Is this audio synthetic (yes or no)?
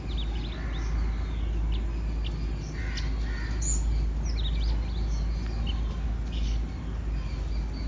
no